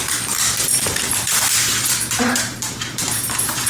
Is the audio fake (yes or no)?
yes